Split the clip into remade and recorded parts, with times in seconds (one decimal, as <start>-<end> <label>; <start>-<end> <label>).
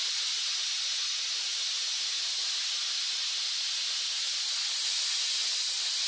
0.0-6.1 recorded